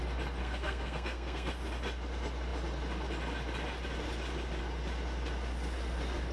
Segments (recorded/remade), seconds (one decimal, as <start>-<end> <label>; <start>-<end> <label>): 0.0-0.4 recorded; 0.4-1.5 remade; 1.5-6.3 recorded